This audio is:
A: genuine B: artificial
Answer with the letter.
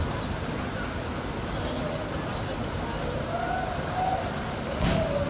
A